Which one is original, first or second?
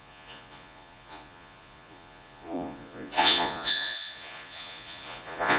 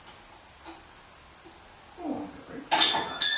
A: second